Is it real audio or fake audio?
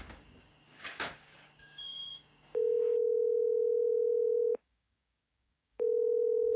fake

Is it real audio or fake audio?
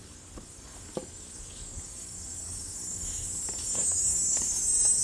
fake